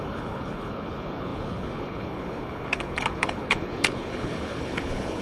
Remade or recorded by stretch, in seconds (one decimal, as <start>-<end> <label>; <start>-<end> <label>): 0.0-5.2 remade